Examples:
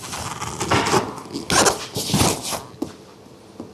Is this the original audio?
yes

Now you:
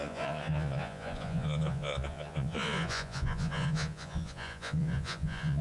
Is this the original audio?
no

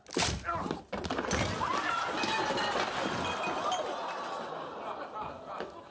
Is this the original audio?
yes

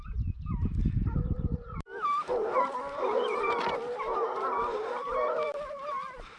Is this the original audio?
no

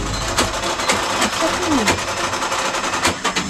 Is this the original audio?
yes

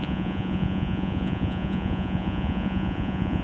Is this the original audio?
no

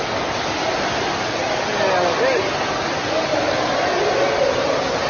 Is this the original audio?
yes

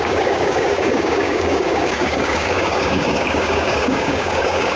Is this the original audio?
no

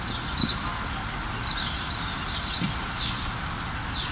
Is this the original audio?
yes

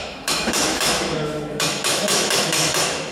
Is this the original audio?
no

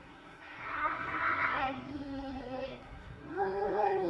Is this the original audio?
no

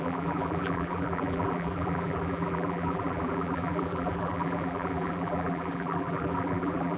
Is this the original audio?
no